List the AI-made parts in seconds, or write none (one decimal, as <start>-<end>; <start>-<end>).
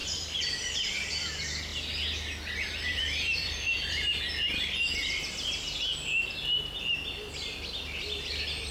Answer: 0.0-1.1; 1.7-4.2